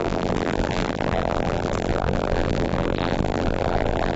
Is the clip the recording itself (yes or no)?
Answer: no